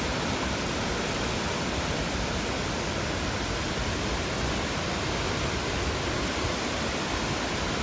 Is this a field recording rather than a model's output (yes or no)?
yes